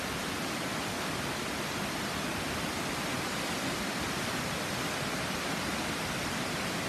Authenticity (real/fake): real